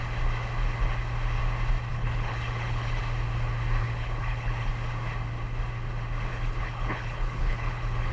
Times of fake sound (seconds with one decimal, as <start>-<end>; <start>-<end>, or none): 1.9-3.0; 3.8-4.7; 6.3-8.1